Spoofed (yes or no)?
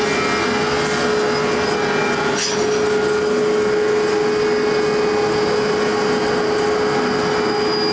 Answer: no